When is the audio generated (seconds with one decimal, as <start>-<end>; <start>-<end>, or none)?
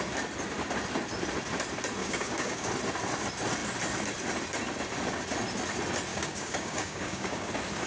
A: 2.0-2.7; 6.1-7.5